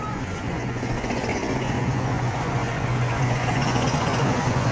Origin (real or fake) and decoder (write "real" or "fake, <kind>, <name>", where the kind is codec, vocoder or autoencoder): fake, vocoder, Vocos